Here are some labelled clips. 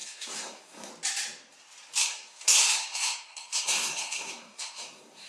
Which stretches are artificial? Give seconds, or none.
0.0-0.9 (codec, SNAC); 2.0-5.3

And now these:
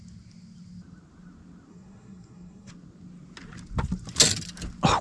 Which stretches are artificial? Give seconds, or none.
1.7-2.7 (codec, SNAC)

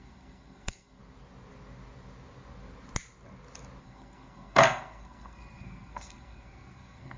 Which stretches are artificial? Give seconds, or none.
0.0-1.0 (codec, SNAC); 3.8-7.2

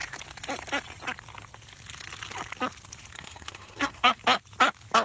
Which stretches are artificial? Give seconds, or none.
3.1-4.2 (codec, SNAC)

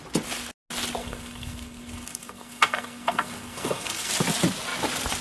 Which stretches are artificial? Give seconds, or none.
1.0-4.1 (codec, SNAC)

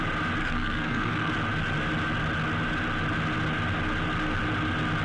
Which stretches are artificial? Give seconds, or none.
0.4-1.3 (codec, SNAC)

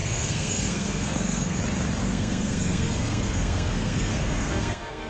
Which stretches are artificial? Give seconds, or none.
0.0-1.6 (codec, SNAC); 2.0-5.1